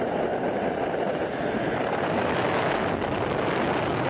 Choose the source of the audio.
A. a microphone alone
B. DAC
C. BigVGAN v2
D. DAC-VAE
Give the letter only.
A